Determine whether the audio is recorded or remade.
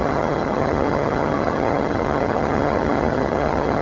remade